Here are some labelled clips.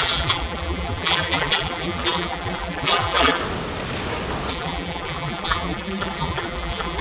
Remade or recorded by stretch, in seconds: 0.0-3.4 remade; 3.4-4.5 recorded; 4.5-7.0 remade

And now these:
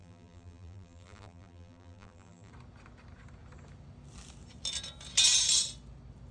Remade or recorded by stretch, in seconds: 0.0-2.5 remade; 2.5-6.3 recorded

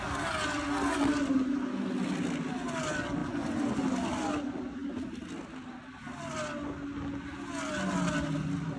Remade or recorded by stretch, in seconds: 0.0-8.8 recorded